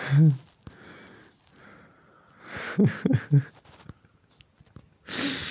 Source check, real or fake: real